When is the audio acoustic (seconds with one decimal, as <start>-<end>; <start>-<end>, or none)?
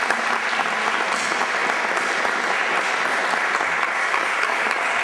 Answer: 0.0-4.0